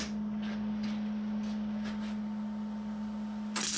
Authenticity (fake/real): real